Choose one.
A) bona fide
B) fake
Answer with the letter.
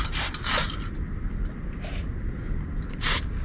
A